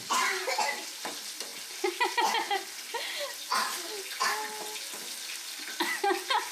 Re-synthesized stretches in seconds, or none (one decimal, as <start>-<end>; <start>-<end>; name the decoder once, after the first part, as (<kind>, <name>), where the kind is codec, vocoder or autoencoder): none